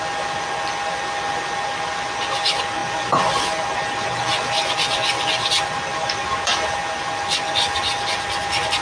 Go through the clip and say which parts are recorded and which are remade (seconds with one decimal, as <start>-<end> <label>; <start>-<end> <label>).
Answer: 0.0-8.8 recorded